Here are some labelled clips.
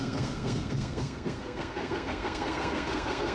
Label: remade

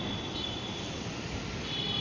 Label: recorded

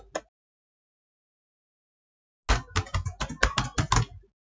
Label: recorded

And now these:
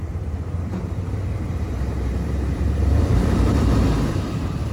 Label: remade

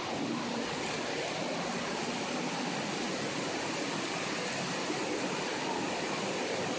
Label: recorded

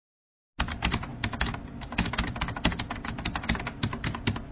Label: recorded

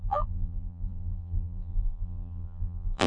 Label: remade